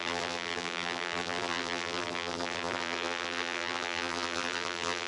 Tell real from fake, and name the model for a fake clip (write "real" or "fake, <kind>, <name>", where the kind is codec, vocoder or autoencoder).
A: fake, vocoder, BigVGAN v2